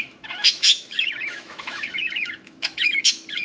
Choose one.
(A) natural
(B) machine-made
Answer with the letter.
B